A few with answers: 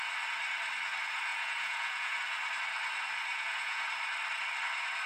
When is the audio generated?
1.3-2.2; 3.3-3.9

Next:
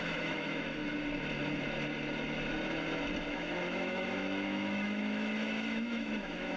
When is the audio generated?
0.0-0.9; 3.3-6.6

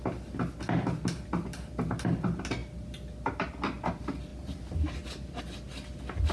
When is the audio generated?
none